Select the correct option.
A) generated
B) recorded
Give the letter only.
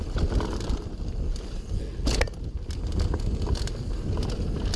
B